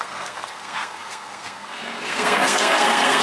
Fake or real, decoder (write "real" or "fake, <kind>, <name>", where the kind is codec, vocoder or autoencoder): fake, codec, SNAC